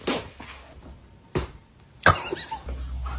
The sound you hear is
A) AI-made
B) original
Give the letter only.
B